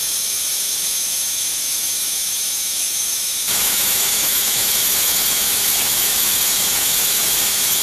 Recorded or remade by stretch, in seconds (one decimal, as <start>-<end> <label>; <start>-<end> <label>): 0.0-7.8 remade